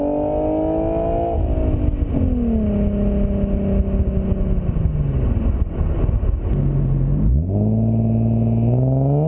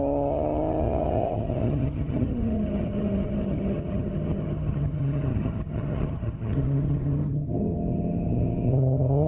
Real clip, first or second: first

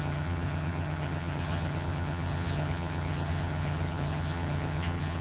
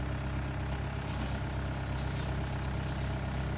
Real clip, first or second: second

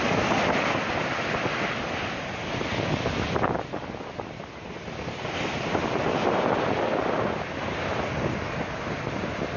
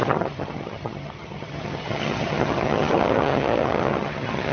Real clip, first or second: first